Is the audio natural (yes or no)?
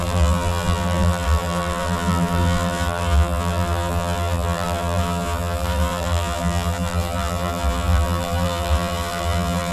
no